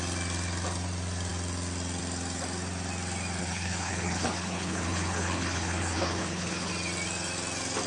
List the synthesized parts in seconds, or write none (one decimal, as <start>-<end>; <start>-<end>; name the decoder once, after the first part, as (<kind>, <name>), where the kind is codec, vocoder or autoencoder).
3.4-6.7 (codec, HILCodec)